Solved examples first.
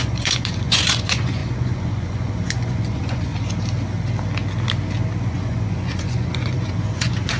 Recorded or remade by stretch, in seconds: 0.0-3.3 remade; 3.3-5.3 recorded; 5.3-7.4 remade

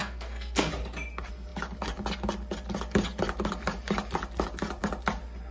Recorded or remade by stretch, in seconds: 0.0-0.7 remade; 0.7-5.5 recorded

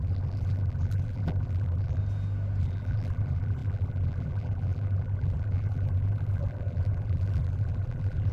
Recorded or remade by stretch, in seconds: 0.0-2.0 remade; 2.0-2.6 recorded; 2.6-8.3 remade

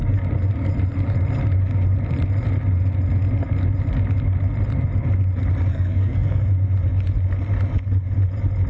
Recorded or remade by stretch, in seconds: 0.0-5.7 recorded; 5.7-6.5 remade; 6.5-8.7 recorded

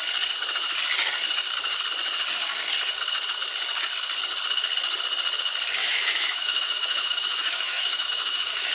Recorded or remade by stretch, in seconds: 0.0-5.8 recorded; 5.8-8.7 remade